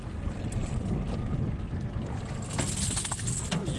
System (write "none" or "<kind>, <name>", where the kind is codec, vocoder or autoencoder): none